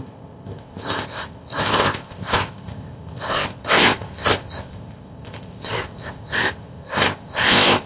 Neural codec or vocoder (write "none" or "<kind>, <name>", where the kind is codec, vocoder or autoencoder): codec, ZipCodec